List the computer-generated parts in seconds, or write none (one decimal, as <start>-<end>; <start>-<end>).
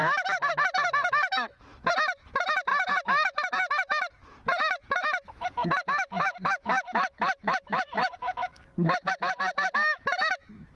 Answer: 0.0-10.8